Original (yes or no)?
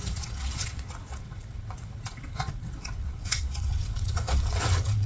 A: no